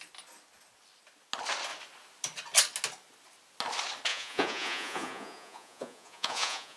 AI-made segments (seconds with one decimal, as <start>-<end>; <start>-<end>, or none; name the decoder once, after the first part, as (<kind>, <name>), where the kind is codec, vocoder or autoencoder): 4.1-6.8 (vocoder, Vocos)